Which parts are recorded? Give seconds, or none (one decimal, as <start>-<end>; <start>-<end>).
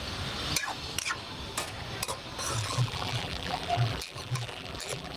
0.0-2.6